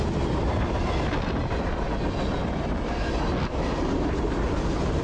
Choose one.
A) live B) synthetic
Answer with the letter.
A